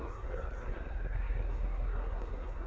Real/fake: fake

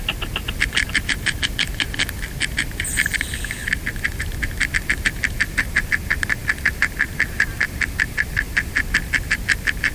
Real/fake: real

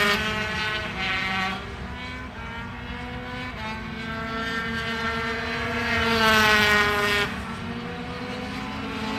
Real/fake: real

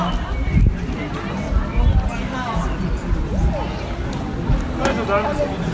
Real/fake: real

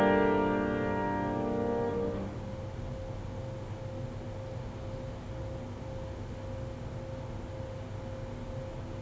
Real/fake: real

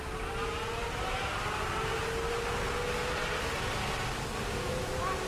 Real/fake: real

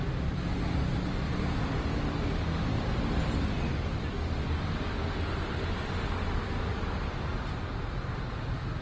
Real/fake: real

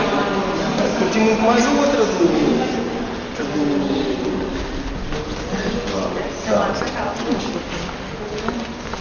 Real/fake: real